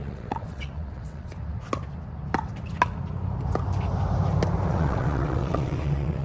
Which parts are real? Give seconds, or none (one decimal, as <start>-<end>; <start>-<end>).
1.3-4.7